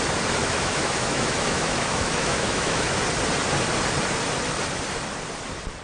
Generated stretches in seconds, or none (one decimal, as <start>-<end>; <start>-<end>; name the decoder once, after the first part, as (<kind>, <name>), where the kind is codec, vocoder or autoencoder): 0.4-3.0 (autoencoder, DAC-VAE)